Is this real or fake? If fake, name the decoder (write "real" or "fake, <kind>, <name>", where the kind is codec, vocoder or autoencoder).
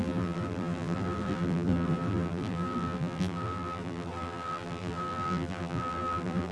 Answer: fake, vocoder, BigVGAN v2